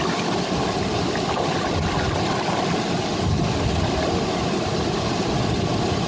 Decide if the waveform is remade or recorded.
recorded